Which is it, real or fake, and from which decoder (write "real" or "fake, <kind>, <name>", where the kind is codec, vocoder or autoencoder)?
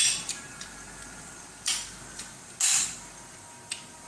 real